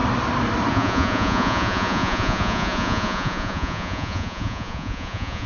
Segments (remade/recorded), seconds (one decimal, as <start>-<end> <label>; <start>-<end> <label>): 0.0-0.7 recorded; 0.7-5.5 remade